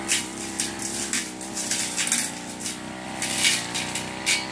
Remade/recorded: recorded